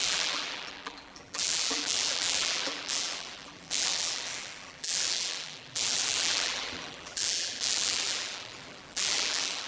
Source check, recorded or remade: remade